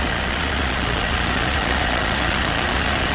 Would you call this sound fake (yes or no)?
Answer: yes